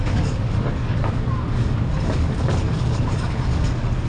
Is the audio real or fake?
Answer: fake